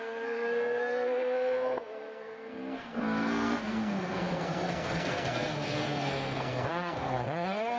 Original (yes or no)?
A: no